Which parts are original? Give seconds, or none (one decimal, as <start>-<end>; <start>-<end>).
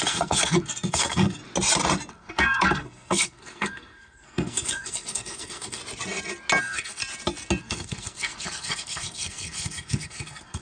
1.4-2.1; 5.8-6.6; 7.0-7.6